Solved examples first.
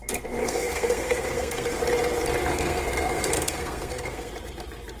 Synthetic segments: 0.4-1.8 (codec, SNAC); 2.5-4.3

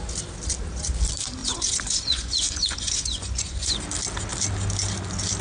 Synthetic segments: 1.4-3.8 (vocoder, Vocos)

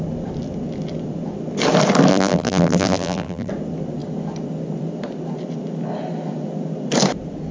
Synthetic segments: 2.1-3.5 (vocoder, BigVGAN v2)

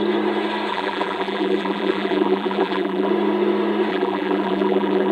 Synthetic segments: 0.7-3.1 (vocoder, BigVGAN v2); 3.9-5.1

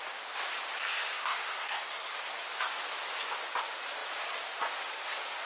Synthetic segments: 0.9-2.1 (codec, SNAC)

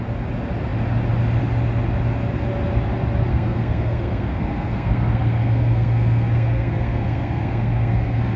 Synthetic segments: 3.3-8.4 (codec, SNAC)